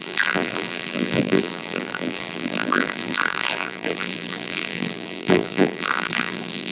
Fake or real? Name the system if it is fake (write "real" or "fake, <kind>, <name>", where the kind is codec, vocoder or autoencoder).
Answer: fake, vocoder, BigVGAN v2